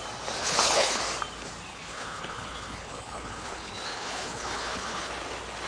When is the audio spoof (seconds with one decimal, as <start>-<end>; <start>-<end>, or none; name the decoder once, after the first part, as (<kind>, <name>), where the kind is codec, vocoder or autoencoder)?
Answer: 0.4-1.0 (codec, HILCodec); 1.7-5.1